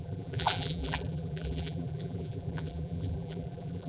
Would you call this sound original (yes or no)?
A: no